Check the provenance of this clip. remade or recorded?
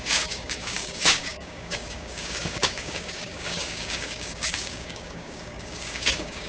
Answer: remade